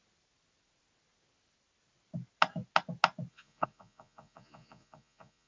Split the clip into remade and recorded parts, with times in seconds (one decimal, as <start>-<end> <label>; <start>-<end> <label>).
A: 0.0-3.3 recorded; 3.3-5.5 remade